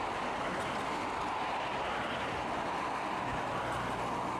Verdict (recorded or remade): recorded